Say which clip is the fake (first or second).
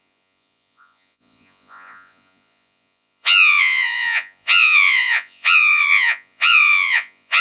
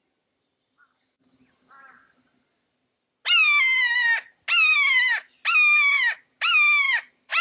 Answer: first